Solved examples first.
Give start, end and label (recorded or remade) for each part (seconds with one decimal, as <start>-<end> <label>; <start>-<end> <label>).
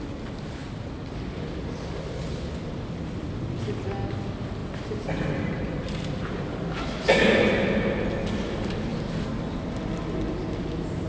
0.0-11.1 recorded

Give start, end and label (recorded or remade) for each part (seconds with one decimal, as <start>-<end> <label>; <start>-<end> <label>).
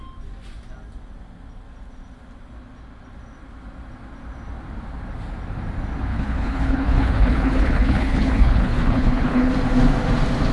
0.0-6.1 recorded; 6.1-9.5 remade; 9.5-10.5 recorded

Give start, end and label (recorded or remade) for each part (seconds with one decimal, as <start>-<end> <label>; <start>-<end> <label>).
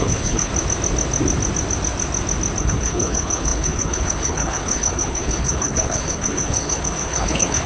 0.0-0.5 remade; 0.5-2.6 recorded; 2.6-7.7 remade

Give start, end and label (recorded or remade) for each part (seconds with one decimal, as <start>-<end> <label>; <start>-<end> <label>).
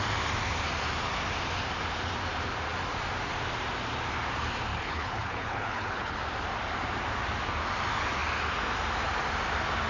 0.0-4.7 recorded; 4.7-6.2 remade; 6.2-9.9 recorded